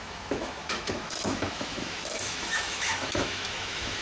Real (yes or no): no